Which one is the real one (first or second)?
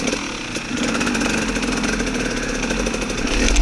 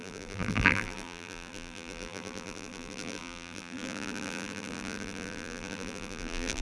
first